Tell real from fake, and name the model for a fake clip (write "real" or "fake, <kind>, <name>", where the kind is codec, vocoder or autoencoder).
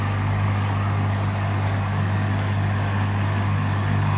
fake, codec, DAC